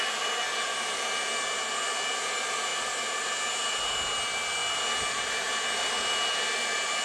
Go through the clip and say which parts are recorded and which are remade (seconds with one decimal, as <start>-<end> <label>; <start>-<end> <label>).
0.0-7.0 recorded